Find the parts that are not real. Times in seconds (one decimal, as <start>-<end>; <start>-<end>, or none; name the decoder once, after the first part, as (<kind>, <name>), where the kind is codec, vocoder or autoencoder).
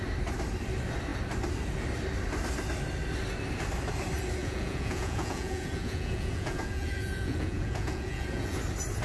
4.4-8.6 (vocoder, Vocos)